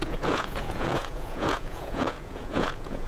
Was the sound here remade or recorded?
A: remade